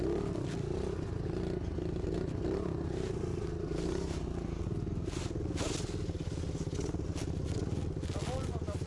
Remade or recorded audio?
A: recorded